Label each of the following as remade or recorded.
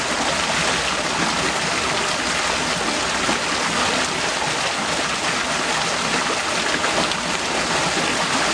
recorded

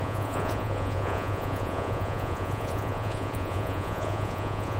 remade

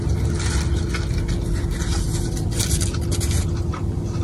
recorded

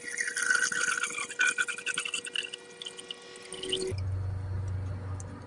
recorded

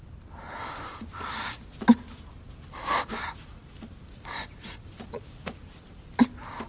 recorded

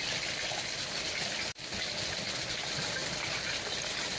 recorded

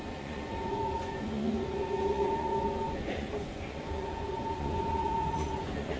remade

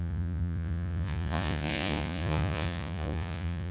remade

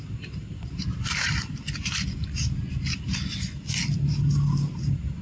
recorded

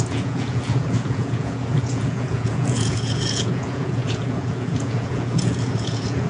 remade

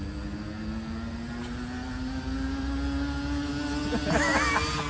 recorded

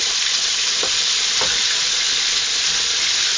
recorded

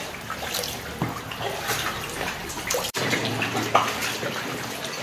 recorded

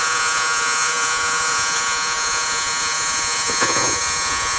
remade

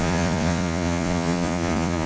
remade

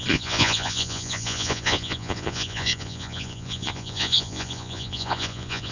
remade